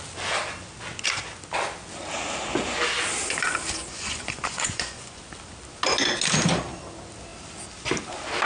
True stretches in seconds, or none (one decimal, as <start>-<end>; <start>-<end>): 0.0-3.9; 5.2-8.5